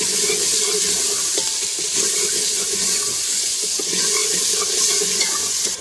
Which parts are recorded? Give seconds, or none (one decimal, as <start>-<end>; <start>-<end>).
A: 0.5-2.5; 4.2-4.9